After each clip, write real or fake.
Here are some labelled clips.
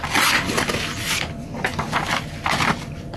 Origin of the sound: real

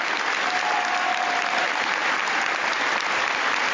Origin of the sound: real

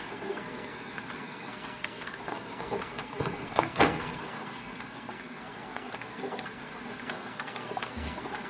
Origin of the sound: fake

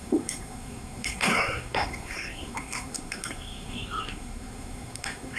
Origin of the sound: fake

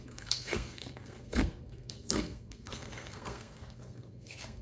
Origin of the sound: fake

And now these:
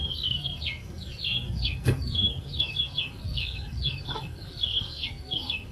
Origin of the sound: fake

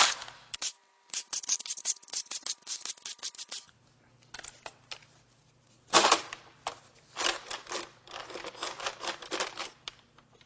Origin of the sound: real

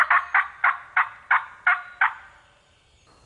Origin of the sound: real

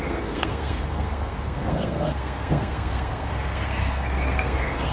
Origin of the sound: fake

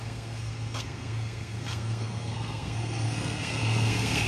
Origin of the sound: fake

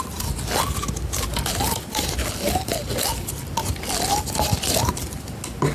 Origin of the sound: real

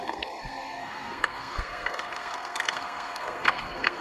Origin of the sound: fake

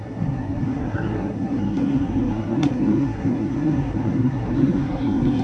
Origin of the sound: fake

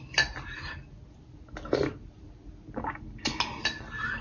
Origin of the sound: real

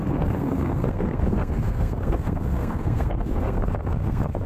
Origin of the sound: fake